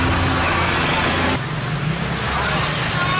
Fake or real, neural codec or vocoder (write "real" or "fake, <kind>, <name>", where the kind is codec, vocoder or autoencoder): real